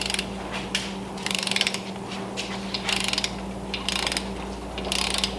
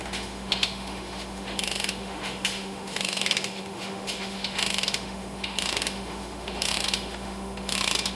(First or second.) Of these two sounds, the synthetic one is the second